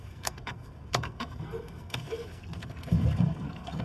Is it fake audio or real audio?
fake